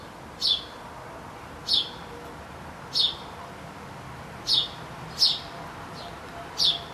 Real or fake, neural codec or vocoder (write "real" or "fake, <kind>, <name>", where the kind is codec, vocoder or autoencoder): real